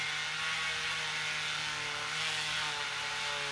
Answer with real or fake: real